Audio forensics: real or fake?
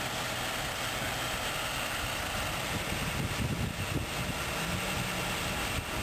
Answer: real